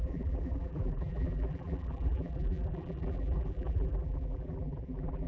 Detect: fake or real fake